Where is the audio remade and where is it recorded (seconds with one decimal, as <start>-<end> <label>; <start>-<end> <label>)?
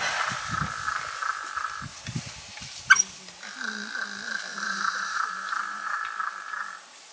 0.0-4.5 recorded; 4.5-6.0 remade; 6.0-7.1 recorded